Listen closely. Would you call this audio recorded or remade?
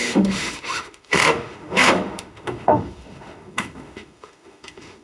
remade